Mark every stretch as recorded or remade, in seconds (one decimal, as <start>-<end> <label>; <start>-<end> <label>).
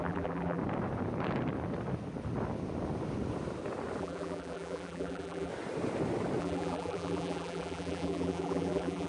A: 0.0-0.6 remade; 0.6-4.0 recorded; 4.0-5.5 remade; 5.5-6.4 recorded; 6.4-9.1 remade